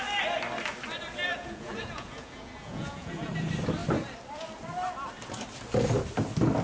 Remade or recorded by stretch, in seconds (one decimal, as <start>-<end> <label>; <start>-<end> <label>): 0.0-1.3 recorded; 1.3-3.3 remade; 3.3-6.6 recorded